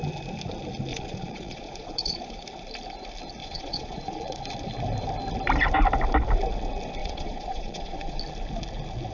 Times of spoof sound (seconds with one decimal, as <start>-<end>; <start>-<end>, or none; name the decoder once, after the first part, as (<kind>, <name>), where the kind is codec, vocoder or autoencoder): 0.9-2.4 (vocoder, Vocos); 3.4-4.4; 7.0-8.2